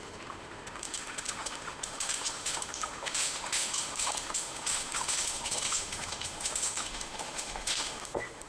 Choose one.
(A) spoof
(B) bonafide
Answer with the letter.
A